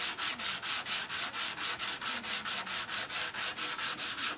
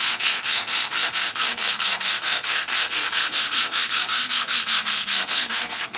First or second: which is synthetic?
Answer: second